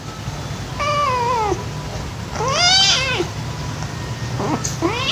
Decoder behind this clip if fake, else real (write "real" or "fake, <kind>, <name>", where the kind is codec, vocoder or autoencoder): real